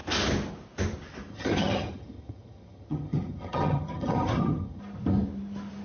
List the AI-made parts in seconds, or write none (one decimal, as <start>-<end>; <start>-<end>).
1.3-4.8